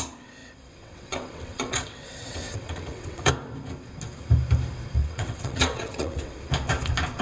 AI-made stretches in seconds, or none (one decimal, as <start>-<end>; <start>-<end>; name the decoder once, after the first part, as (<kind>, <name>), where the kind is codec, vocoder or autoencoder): 0.4-3.3 (vocoder, WaveNeXt); 5.0-6.4